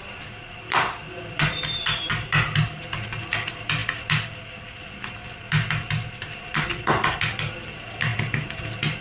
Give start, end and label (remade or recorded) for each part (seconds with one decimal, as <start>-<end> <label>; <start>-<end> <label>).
0.0-9.0 remade